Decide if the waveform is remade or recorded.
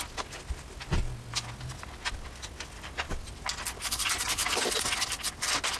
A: recorded